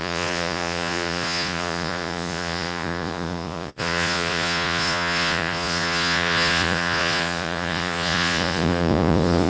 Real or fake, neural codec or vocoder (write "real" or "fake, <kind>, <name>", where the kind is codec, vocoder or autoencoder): fake, vocoder, Vocos